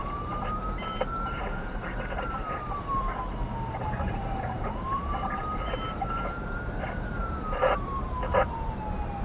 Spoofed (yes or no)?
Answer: yes